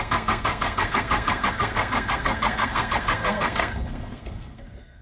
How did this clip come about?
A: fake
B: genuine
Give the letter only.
A